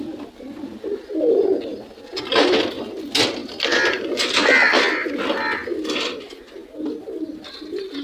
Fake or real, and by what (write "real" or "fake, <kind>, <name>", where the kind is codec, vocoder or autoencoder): real